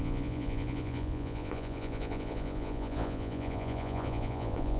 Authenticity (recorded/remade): remade